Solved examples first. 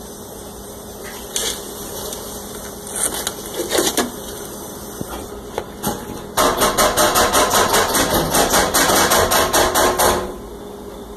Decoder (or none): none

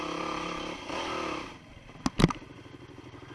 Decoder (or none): none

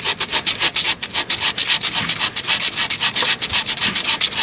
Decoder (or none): none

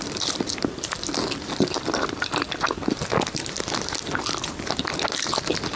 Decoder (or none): none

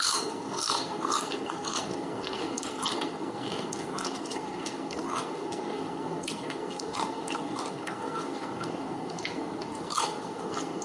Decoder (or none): codec, SNAC